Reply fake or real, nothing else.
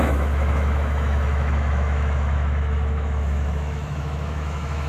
fake